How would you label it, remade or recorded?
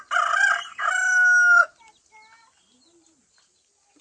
recorded